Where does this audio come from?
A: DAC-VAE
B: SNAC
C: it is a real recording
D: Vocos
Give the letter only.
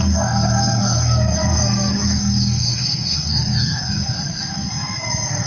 B